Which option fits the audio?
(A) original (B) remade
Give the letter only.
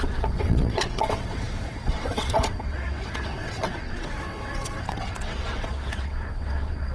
B